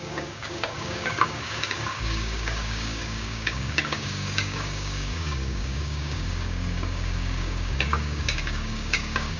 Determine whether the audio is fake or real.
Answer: fake